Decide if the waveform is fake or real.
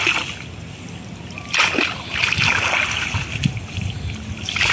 real